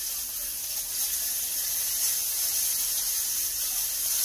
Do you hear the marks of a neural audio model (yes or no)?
no